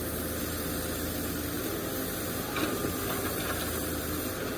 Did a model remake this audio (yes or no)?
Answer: no